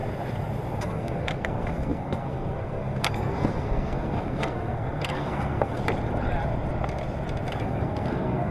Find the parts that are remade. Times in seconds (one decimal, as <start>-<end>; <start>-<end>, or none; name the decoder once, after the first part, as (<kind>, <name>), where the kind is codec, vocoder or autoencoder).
0.8-5.8 (codec, SNAC); 7.6-8.5